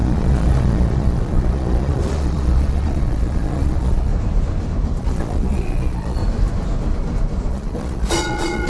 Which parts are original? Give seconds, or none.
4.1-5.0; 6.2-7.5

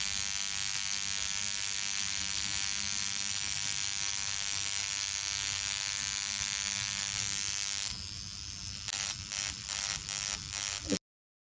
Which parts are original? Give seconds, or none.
0.0-11.4

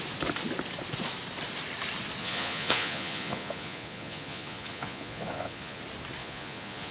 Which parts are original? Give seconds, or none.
0.0-2.2; 5.8-6.2

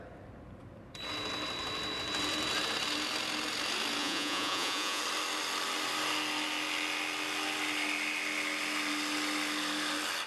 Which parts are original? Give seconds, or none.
0.0-4.0; 5.0-10.3

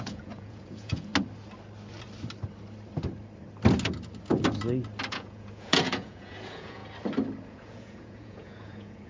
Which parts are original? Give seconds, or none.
1.1-5.1; 6.8-7.5

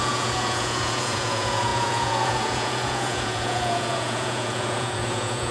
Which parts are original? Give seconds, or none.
none

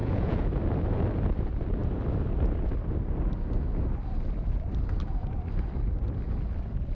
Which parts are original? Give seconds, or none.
0.5-6.9